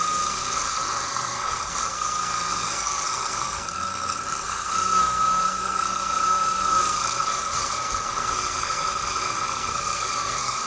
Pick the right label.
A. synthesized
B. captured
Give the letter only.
A